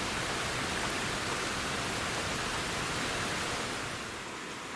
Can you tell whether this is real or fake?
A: real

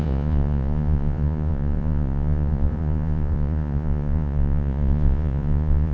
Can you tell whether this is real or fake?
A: fake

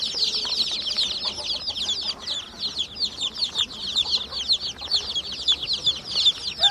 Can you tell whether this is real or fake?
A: real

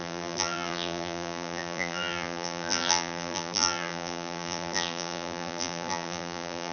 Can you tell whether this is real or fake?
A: fake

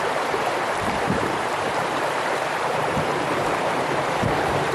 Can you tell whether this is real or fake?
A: fake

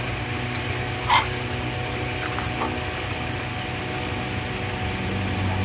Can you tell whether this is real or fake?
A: real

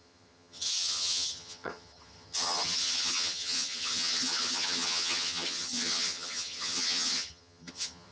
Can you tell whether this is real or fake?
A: fake